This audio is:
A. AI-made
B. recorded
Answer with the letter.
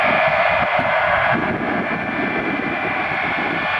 B